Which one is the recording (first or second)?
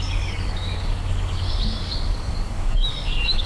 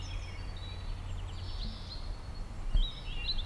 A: second